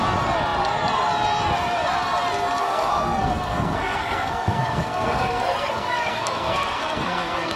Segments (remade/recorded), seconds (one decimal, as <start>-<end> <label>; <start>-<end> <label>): 0.0-2.6 recorded; 2.6-7.6 remade